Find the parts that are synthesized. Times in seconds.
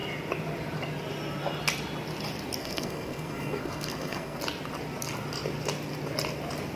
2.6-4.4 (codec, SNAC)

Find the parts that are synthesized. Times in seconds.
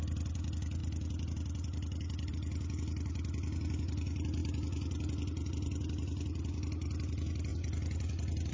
none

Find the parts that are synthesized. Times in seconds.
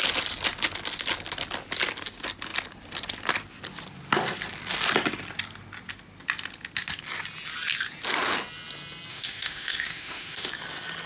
9.1-10.5 (autoencoder, DAC-VAE)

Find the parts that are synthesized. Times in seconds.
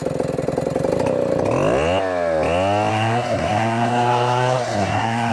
2.9-5.3 (codec, SNAC)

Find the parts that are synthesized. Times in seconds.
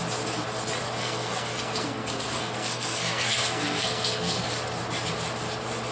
1.0-4.5 (codec, SNAC)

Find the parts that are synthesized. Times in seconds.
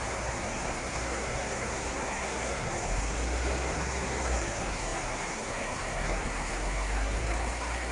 0.0-7.9 (codec, SNAC)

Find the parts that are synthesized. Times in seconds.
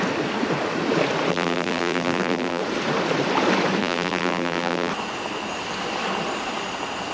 1.3-2.6 (vocoder, BigVGAN v2); 3.8-4.9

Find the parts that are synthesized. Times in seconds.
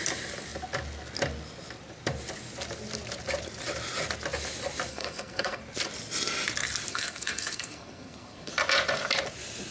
4.9-5.6 (codec, SNAC); 6.9-8.5